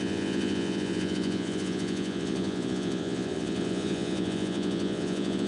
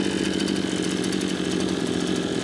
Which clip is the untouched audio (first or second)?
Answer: second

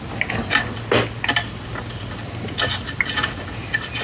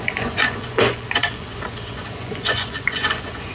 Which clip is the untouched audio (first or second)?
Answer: first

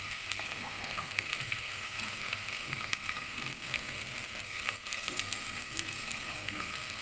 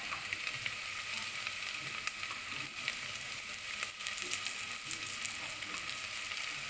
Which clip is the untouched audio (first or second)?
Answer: second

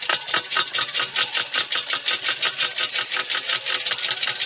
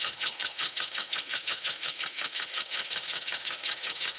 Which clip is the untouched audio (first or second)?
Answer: first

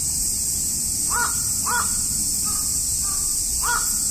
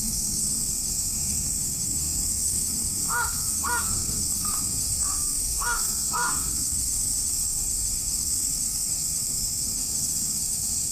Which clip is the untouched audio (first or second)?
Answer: first